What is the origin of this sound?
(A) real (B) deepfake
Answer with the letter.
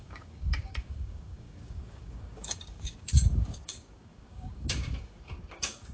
B